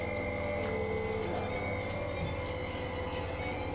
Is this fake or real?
real